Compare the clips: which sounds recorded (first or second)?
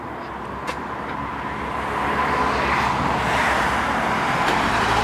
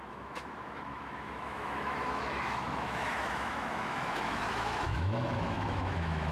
first